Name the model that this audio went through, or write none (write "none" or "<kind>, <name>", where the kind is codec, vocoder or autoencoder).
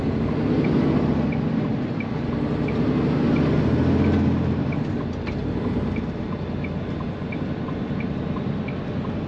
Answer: none